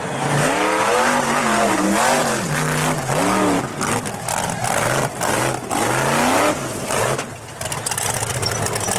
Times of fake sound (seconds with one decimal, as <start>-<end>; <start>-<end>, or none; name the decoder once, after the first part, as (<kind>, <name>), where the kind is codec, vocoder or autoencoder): none